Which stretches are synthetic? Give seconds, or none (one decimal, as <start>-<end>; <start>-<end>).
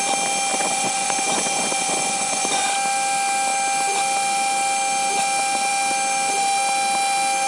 0.5-2.7